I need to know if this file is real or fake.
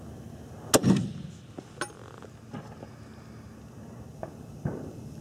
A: real